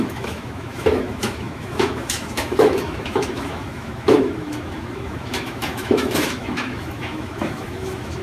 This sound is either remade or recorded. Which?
remade